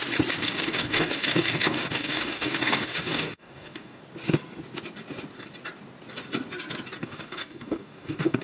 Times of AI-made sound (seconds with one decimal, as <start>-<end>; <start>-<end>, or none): 0.4-4.0; 7.0-8.4